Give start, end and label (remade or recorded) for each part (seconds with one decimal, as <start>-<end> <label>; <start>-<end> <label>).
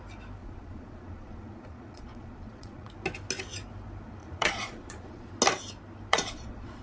0.0-0.4 recorded; 0.4-2.9 remade; 2.9-4.2 recorded; 4.2-5.3 remade; 5.3-6.1 recorded; 6.1-6.8 remade